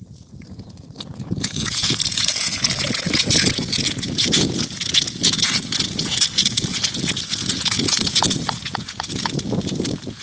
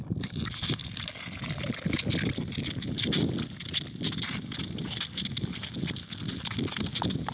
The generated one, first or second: first